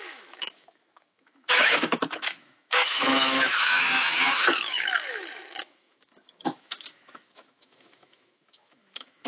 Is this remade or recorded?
remade